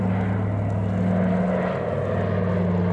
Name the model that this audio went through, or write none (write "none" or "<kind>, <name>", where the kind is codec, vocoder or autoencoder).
none